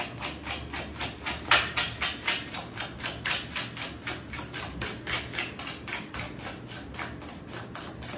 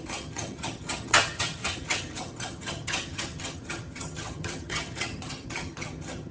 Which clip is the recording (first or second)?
first